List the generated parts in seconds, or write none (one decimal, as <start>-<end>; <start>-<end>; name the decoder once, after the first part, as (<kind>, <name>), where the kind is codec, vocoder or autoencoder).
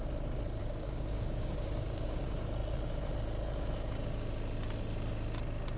0.6-2.2 (codec, DAC)